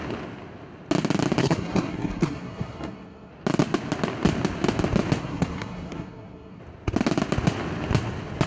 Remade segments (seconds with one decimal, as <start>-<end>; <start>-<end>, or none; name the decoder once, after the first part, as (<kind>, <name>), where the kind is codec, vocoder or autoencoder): 1.4-3.3 (codec, SNAC); 5.2-6.6